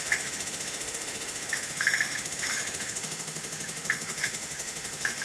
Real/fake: fake